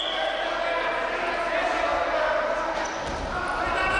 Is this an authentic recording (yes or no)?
yes